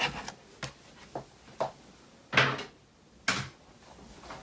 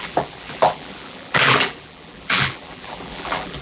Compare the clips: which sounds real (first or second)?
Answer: first